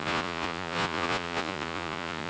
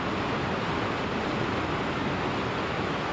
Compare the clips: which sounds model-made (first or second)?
first